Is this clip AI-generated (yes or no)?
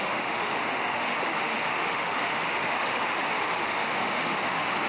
yes